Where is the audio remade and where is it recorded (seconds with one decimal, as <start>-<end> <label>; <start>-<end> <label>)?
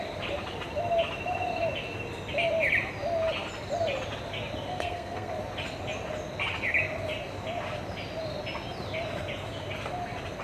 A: 0.0-4.7 recorded; 4.7-5.3 remade; 5.3-10.4 recorded